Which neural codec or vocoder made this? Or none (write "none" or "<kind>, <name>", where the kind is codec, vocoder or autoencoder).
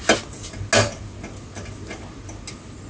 none